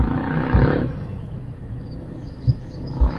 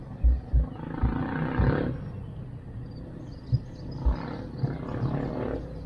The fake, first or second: first